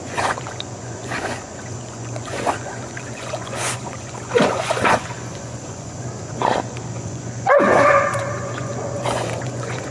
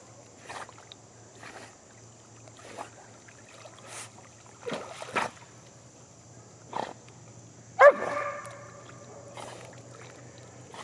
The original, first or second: second